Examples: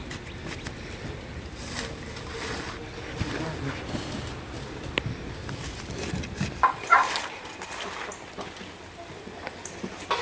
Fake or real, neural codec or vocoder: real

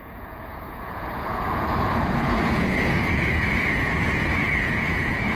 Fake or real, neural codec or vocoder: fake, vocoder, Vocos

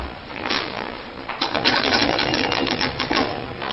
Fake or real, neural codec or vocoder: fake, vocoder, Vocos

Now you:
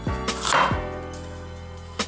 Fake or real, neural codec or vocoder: real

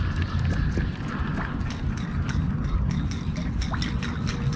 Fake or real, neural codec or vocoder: real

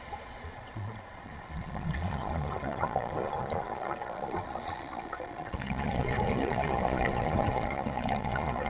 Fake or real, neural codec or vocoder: fake, vocoder, Vocos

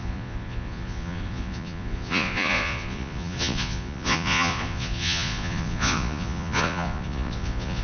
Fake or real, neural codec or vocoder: fake, vocoder, Vocos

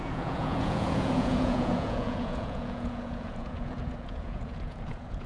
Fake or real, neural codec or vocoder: fake, vocoder, Vocos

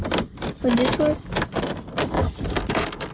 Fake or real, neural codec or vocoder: real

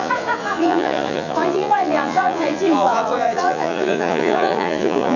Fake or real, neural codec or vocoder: fake, vocoder, Vocos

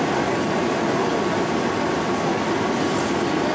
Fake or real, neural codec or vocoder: real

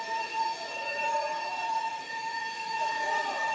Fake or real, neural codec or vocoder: fake, vocoder, Vocos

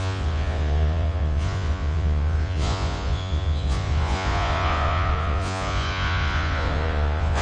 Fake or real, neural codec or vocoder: fake, vocoder, Vocos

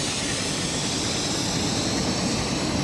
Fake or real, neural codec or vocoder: real